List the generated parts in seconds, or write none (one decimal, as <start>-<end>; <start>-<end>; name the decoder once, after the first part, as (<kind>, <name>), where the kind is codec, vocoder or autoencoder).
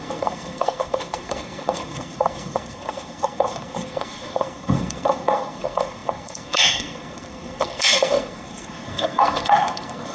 0.0-10.1 (codec, SNAC)